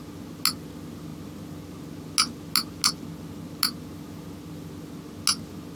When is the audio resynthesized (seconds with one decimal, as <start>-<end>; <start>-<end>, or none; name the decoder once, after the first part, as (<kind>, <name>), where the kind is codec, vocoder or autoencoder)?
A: none

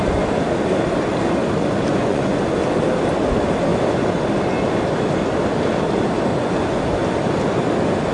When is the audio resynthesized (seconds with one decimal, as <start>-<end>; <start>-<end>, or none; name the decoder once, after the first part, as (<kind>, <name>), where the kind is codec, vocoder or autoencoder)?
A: 1.9-2.4 (vocoder, Vocos); 6.3-6.8

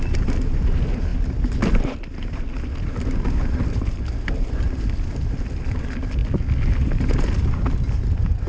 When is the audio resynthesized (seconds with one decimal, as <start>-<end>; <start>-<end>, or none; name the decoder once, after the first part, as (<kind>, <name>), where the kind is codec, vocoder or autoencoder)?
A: none

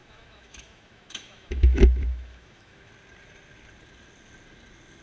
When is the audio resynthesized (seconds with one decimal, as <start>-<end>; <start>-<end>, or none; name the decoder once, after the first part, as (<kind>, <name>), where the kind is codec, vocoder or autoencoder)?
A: 0.0-2.9 (autoencoder, DAC-VAE)